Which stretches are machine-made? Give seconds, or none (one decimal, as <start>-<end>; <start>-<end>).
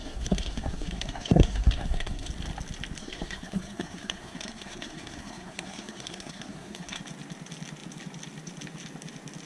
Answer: 0.0-2.3; 3.0-7.0